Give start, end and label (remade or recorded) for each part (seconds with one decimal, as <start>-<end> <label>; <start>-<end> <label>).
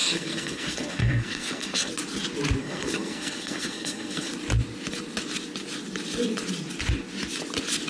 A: 0.0-1.9 remade; 1.9-2.6 recorded; 2.6-4.3 remade; 4.3-7.9 recorded